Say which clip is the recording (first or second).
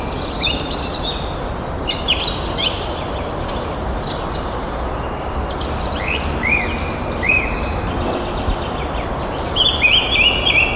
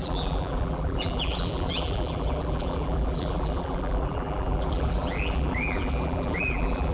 first